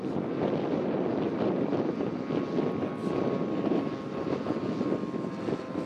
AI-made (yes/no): no